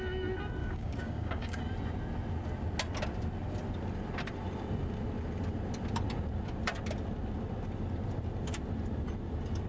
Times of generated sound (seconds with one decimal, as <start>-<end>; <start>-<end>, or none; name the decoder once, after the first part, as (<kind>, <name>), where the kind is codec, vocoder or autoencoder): 0.6-1.6 (codec, DAC)